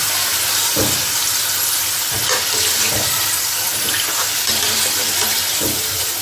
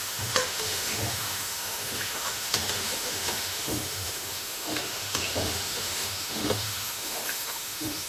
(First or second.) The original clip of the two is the first